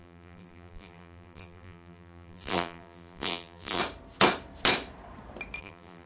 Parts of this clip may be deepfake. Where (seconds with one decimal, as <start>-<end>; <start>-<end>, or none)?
0.0-3.8; 5.6-6.1